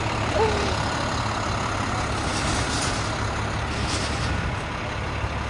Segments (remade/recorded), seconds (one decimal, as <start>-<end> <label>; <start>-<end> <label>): 0.0-5.5 recorded